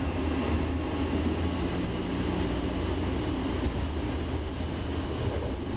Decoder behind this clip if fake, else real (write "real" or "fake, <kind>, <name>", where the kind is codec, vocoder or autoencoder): real